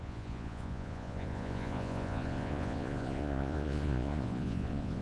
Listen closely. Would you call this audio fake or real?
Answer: fake